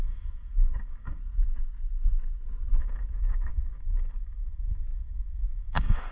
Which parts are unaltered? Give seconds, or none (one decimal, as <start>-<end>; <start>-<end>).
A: 1.2-2.8